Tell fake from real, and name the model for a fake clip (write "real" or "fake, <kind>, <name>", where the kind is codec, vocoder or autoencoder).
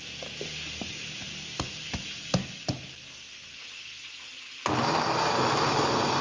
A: real